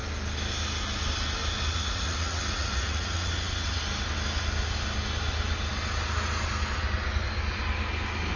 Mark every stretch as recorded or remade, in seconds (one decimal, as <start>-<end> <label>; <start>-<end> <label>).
0.0-1.7 recorded; 1.7-3.8 remade; 3.8-8.4 recorded